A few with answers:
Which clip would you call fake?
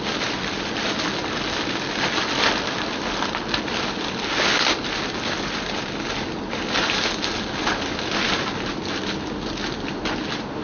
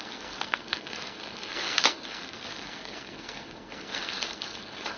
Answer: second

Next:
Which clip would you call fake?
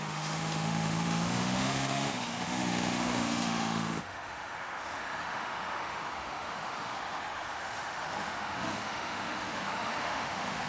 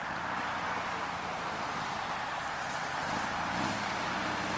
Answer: first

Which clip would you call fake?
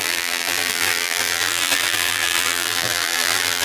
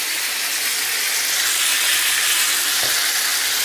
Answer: first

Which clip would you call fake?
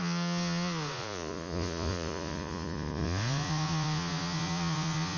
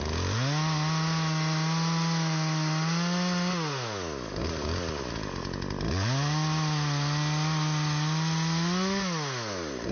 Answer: first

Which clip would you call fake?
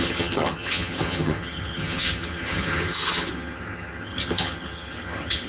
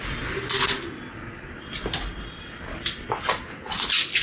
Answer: first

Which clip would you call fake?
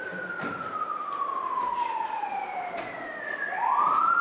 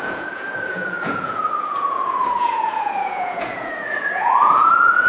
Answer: second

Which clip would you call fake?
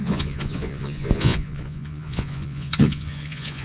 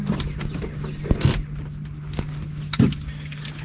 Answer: first